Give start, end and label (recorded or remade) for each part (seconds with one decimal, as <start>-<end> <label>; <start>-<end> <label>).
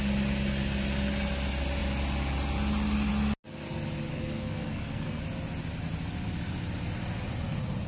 0.0-4.1 recorded; 4.1-5.2 remade; 5.2-7.9 recorded